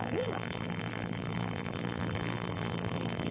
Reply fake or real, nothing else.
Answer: fake